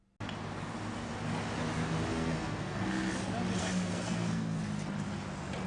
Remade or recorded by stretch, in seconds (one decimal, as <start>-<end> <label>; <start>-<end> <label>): 0.0-2.1 recorded; 2.1-3.1 remade; 3.1-3.6 recorded; 3.6-4.6 remade; 4.6-5.7 recorded